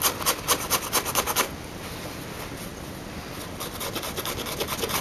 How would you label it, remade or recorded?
recorded